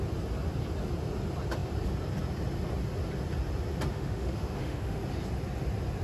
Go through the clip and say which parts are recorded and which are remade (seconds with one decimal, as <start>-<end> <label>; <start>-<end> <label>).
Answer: 0.0-3.9 recorded; 3.9-5.0 remade; 5.0-6.0 recorded